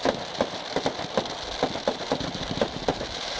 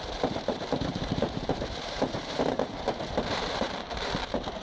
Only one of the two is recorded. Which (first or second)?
first